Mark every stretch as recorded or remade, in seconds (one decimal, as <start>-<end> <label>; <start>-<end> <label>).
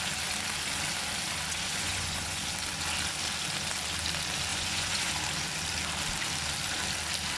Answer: 0.0-1.5 recorded; 1.5-2.4 remade; 2.4-4.5 recorded; 4.5-5.1 remade; 5.1-7.4 recorded